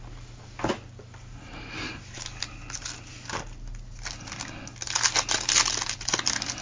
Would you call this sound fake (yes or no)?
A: no